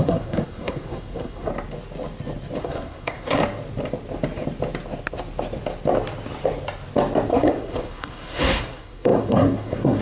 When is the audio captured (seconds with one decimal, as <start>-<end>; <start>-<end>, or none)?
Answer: 1.5-2.6; 3.4-7.3